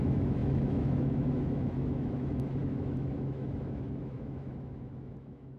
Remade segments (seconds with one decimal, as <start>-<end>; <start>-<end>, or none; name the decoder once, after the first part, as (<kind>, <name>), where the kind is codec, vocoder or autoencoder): 0.0-5.6 (autoencoder, DAC-VAE)